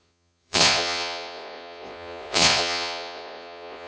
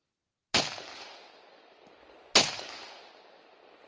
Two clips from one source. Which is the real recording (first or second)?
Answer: second